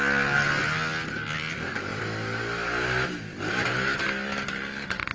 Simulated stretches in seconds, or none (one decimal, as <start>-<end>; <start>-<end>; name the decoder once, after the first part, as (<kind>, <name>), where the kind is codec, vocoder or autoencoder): none

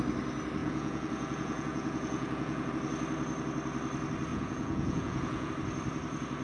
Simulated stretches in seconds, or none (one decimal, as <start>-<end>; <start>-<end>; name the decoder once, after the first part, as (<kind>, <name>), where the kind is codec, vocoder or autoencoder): 0.6-2.7 (vocoder, Vocos); 4.3-5.5

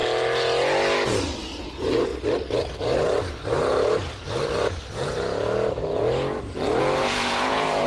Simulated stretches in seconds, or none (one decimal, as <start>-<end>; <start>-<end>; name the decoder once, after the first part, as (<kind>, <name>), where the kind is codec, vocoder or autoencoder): 1.6-2.1 (vocoder, Vocos); 6.8-7.9

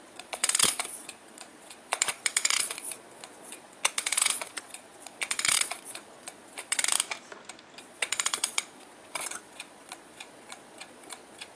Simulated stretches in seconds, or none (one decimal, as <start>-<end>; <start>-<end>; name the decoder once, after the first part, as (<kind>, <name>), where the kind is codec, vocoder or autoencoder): 0.0-6.8 (vocoder, Vocos); 7.8-11.6

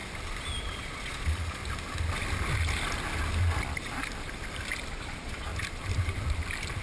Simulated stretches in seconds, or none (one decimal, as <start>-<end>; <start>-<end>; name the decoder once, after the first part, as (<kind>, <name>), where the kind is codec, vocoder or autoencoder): 0.6-1.6 (vocoder, Vocos); 4.9-5.5

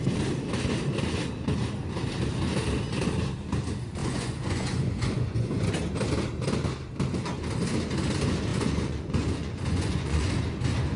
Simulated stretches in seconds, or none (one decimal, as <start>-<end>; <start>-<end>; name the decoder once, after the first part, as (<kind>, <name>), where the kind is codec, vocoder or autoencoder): 4.0-5.7 (vocoder, Vocos); 8.5-10.3

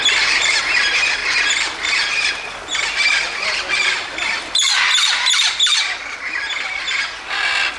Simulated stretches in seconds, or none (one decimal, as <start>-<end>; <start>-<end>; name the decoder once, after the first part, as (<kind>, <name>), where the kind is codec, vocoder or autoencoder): none

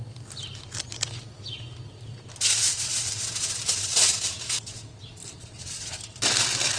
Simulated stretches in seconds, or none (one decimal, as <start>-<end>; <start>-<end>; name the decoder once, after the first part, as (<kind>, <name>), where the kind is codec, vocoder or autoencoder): 5.4-6.0 (vocoder, Vocos)